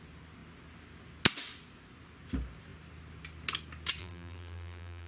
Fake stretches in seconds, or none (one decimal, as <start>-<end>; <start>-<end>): 4.0-5.1